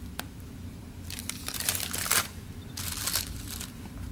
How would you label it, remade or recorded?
remade